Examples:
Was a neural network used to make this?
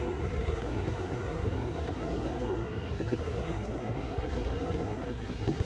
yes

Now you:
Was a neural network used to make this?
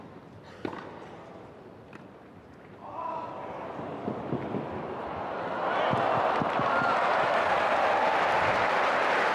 no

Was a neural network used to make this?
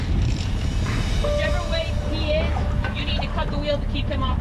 no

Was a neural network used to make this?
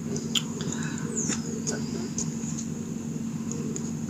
no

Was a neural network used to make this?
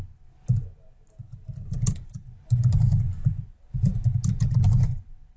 no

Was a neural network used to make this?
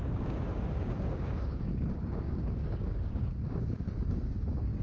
yes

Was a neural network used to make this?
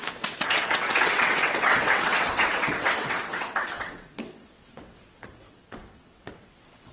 yes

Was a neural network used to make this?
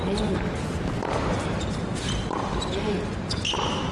no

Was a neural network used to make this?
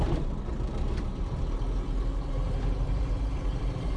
yes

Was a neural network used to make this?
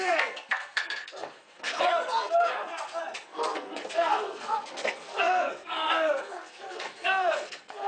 yes